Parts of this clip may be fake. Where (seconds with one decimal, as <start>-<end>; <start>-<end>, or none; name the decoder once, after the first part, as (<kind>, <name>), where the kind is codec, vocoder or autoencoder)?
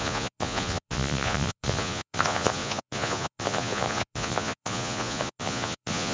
0.0-6.1 (vocoder, Vocos)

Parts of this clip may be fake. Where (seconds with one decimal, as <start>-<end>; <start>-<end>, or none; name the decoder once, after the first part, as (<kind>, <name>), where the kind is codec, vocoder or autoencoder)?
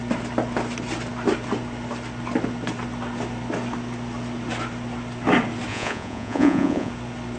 5.7-6.9 (vocoder, Vocos)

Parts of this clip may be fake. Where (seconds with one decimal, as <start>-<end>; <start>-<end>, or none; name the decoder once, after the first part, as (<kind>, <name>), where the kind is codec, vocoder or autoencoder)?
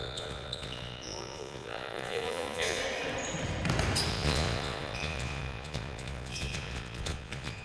0.0-2.8 (vocoder, Vocos); 4.1-7.6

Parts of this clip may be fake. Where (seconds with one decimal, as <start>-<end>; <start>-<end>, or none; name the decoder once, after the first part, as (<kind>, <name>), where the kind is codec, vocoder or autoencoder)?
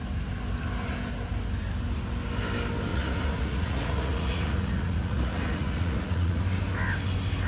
2.9-6.4 (vocoder, Vocos)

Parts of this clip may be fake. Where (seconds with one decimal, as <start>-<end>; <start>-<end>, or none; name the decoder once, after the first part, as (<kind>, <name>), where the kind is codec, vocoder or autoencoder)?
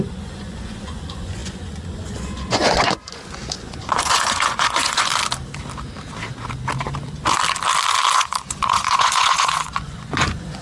0.0-5.1 (vocoder, Vocos); 8.1-10.6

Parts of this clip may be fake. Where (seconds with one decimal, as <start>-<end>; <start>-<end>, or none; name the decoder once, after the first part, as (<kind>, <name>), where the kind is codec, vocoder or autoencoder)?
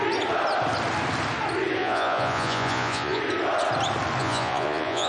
1.8-3.2 (vocoder, Vocos); 4.2-5.1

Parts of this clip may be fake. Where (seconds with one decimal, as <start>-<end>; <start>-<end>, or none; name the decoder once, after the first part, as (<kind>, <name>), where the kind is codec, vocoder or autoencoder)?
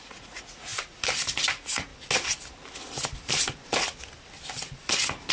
0.0-0.7 (vocoder, Vocos); 1.5-1.9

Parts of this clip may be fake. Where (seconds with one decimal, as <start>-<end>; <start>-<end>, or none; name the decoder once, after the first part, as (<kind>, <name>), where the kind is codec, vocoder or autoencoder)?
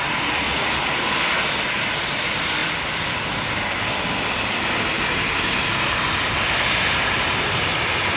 none